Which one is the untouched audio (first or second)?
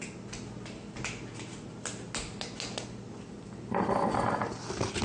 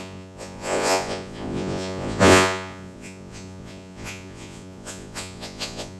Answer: first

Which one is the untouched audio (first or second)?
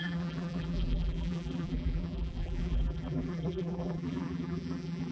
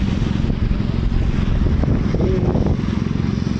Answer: second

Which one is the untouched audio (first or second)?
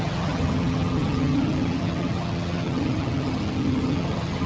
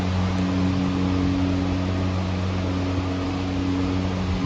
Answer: second